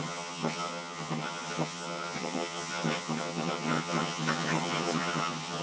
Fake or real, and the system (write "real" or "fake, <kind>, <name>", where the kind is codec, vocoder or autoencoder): fake, vocoder, HiFi-GAN